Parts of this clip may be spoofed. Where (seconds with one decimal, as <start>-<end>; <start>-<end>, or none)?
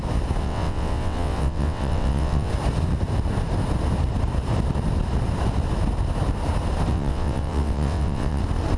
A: 0.4-2.5; 6.9-8.4